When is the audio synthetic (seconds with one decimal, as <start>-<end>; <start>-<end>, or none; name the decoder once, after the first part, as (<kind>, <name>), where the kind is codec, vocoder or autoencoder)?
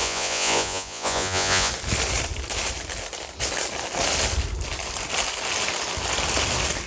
0.0-1.7 (vocoder, Vocos)